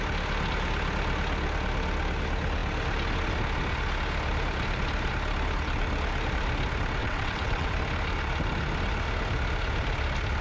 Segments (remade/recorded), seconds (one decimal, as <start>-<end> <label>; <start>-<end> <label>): 0.0-7.0 recorded; 7.0-7.7 remade; 7.7-10.4 recorded